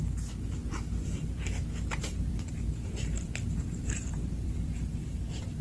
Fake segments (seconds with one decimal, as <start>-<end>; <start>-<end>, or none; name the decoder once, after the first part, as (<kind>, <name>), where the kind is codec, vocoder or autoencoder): 0.6-1.6 (vocoder, BigVGAN v2); 2.0-5.6

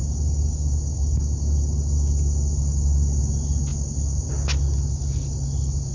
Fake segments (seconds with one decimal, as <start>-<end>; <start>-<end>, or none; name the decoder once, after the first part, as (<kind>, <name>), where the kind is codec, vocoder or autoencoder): none

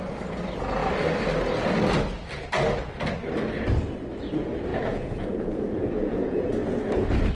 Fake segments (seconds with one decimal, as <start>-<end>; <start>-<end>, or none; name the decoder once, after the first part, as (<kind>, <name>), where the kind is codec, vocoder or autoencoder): 4.7-6.5 (vocoder, Vocos)

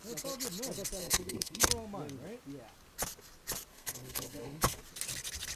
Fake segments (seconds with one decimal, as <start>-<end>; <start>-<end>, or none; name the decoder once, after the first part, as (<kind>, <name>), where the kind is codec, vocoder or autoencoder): 1.0-1.7 (codec, SNAC); 3.7-4.8

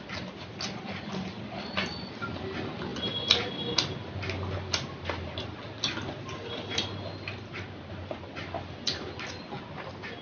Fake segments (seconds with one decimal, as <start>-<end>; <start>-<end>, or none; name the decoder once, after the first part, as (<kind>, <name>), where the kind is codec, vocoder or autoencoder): none

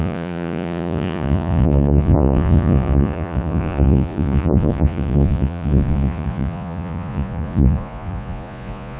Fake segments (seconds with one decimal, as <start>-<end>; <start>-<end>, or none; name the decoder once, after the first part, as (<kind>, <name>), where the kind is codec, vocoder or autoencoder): 0.0-9.0 (vocoder, Vocos)